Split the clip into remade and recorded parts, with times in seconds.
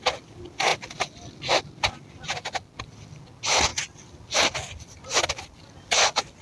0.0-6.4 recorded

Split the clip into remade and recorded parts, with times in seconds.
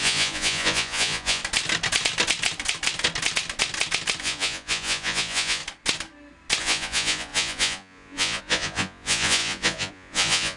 0.0-1.4 remade; 1.4-4.2 recorded; 4.2-5.6 remade; 5.6-6.6 recorded; 6.6-10.6 remade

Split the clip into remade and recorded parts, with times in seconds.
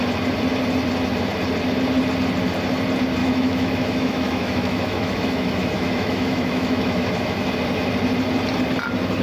0.0-3.2 recorded; 3.2-7.5 remade; 7.5-9.2 recorded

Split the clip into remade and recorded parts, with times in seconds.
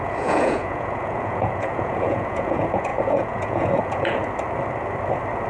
0.0-4.2 remade; 4.2-5.5 recorded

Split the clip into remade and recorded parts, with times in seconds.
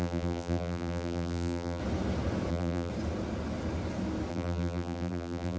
0.0-1.8 remade; 1.8-2.5 recorded; 2.5-2.9 remade; 2.9-4.3 recorded; 4.3-5.6 remade